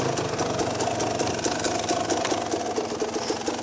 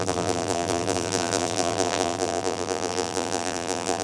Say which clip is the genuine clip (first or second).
first